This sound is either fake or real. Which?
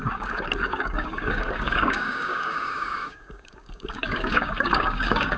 fake